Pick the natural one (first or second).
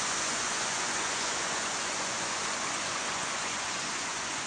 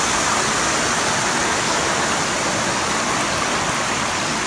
second